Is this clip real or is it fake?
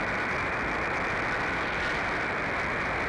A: real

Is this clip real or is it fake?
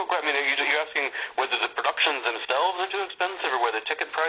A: real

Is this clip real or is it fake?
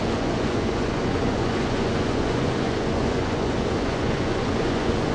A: fake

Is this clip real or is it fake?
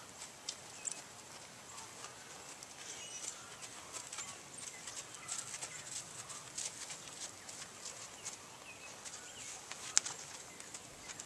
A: real